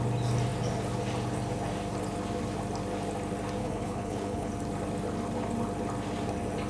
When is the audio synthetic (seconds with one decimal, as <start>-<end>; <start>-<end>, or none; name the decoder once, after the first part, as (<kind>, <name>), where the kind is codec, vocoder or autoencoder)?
3.6-4.5 (codec, HILCodec)